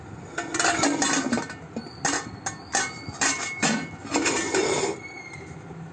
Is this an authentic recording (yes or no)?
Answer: yes